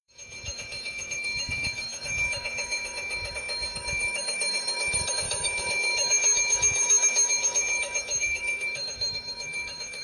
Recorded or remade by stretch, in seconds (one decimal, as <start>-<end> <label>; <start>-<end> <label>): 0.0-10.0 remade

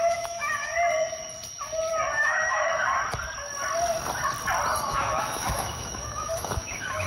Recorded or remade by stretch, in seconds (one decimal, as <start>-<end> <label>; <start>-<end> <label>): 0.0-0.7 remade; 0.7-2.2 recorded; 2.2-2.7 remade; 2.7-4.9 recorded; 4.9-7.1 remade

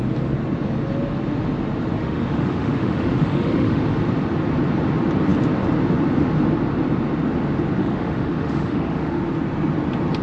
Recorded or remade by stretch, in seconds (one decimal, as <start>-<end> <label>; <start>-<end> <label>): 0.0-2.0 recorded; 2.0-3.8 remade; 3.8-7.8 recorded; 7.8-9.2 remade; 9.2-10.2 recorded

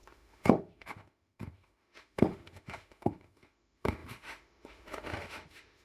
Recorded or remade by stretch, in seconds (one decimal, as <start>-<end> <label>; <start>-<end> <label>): 0.0-5.8 remade

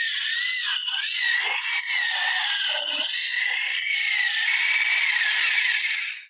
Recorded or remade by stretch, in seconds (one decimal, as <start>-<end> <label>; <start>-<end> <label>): 0.0-6.3 recorded

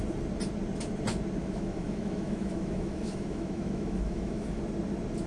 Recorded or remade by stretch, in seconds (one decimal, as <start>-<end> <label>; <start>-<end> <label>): 0.0-1.4 recorded; 1.4-4.6 remade; 4.6-5.3 recorded